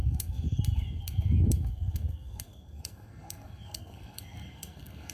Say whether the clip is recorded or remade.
remade